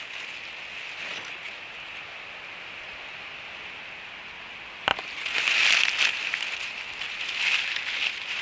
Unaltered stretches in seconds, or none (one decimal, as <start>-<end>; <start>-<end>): 0.0-8.4